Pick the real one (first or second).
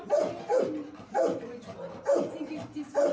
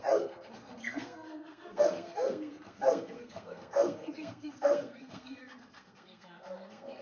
first